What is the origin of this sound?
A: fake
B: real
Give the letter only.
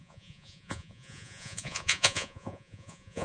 A